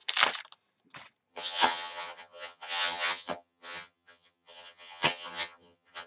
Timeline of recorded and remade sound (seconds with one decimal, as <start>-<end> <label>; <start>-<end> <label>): 0.0-1.3 recorded; 1.3-6.1 remade